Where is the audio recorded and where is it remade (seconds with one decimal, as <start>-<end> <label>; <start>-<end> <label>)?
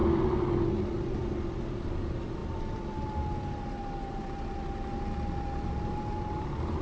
0.0-6.8 recorded